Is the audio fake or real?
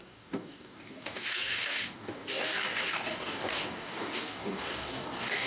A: fake